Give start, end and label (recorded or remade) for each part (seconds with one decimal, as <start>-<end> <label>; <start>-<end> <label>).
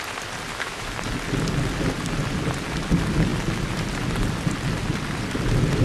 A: 0.0-0.5 recorded; 0.5-1.0 remade; 1.0-5.8 recorded